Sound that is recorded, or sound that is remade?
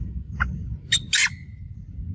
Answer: recorded